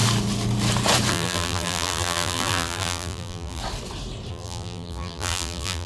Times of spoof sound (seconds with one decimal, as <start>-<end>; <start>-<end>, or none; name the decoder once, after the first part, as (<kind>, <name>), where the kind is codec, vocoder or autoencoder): 1.1-3.6 (vocoder, BigVGAN v2); 4.3-5.9